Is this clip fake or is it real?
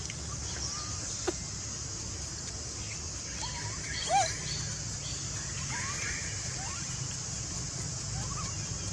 real